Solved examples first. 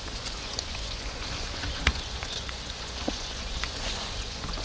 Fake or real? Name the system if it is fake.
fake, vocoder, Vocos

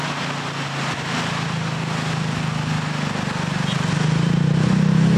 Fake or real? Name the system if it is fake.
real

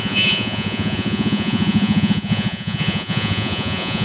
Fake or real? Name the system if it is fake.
fake, vocoder, Vocos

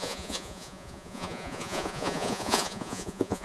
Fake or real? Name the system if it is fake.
fake, vocoder, Vocos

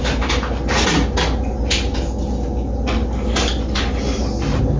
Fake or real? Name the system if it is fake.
real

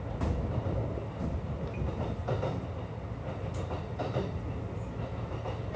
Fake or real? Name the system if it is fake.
real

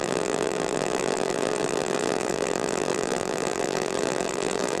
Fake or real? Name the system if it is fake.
fake, vocoder, BigVGAN v2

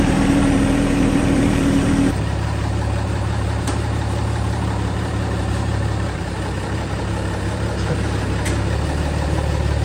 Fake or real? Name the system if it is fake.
fake, vocoder, BigVGAN v2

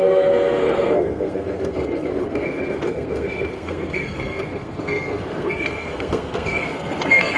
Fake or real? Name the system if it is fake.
fake, codec, SNAC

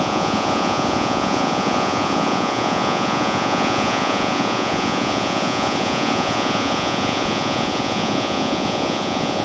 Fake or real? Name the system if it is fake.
fake, vocoder, Vocos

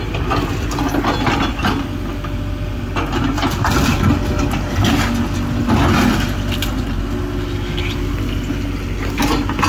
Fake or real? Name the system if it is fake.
real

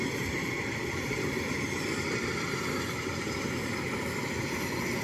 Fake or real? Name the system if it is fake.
fake, vocoder, BigVGAN v2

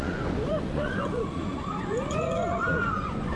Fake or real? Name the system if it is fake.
fake, vocoder, Vocos